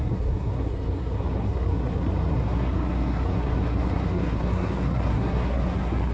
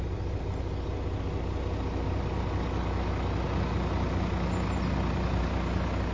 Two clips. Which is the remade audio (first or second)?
first